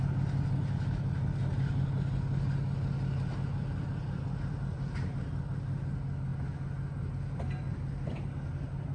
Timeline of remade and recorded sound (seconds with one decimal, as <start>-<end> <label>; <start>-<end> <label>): 0.0-8.9 recorded